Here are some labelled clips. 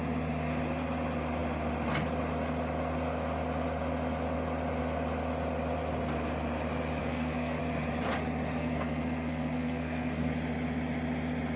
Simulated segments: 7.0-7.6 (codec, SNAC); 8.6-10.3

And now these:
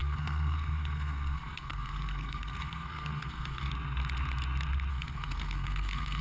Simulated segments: 0.0-3.7 (codec, SNAC); 4.9-6.2

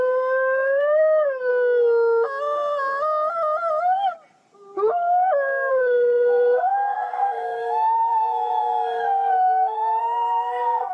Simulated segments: 0.0-1.5 (codec, SNAC); 5.7-10.9

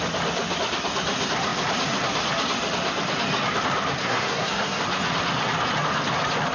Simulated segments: 4.0-4.8 (codec, SNAC)

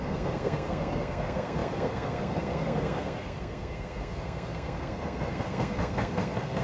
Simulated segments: 0.0-6.6 (codec, SNAC)

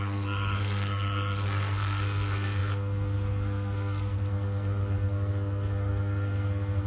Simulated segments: 0.0-6.9 (codec, SNAC)

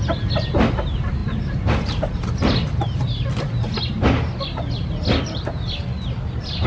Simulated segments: none